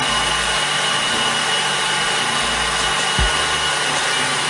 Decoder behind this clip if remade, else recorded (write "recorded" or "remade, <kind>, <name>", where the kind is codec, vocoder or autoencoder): recorded